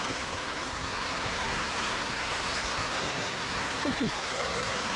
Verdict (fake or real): fake